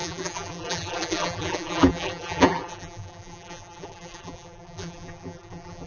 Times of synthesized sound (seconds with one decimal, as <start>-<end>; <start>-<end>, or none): 0.0-5.9